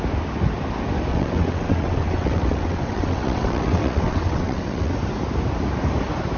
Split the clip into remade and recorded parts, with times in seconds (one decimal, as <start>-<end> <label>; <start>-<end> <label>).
0.0-1.1 recorded; 1.1-4.9 remade; 4.9-6.4 recorded